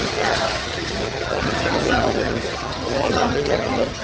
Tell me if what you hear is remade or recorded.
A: remade